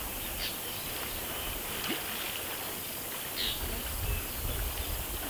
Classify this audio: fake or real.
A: real